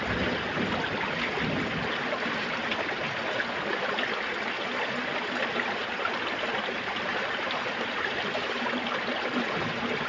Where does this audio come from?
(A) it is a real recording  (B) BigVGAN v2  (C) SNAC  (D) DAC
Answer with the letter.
A